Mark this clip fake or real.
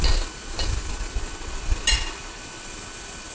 real